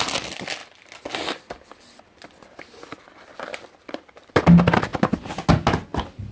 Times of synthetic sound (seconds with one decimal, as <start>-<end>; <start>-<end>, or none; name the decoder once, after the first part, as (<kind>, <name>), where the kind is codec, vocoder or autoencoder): 0.6-4.4 (vocoder, BigVGAN v2)